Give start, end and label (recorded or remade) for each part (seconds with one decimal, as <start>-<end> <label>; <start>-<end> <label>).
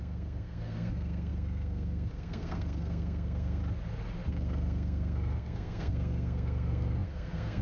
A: 0.0-3.6 remade; 3.6-4.3 recorded; 4.3-7.6 remade